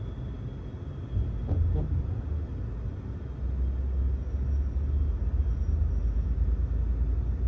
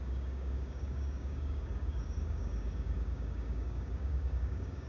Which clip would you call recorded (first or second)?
first